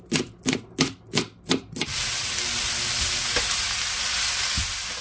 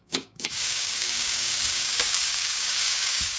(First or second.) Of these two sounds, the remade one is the second